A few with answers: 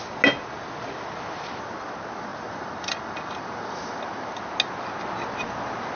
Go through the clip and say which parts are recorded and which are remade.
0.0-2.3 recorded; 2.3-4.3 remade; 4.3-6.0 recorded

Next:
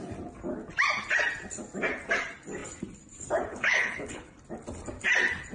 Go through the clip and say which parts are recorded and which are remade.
0.0-3.5 recorded; 3.5-4.4 remade; 4.4-5.5 recorded

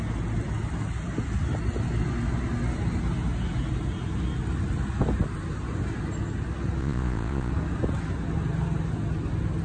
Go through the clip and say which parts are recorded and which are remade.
0.0-6.8 recorded; 6.8-7.5 remade; 7.5-9.6 recorded

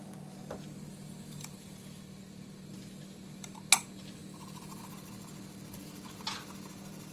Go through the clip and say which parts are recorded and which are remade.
0.0-0.9 recorded; 0.9-3.0 remade; 3.0-7.1 recorded